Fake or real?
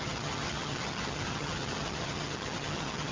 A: fake